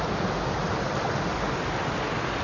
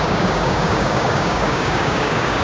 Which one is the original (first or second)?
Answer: first